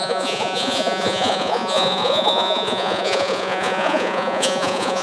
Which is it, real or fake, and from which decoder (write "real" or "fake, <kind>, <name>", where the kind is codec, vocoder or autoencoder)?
fake, vocoder, Vocos